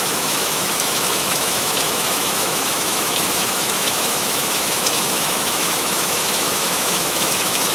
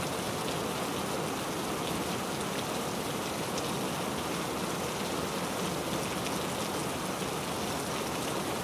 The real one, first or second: second